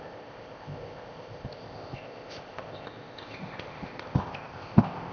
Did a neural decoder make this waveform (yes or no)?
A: yes